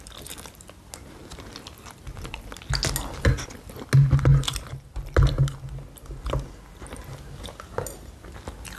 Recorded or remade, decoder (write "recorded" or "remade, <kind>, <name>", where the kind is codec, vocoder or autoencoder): recorded